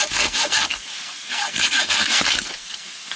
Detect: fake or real fake